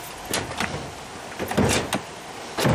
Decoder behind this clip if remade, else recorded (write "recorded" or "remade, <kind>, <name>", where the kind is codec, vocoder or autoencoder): recorded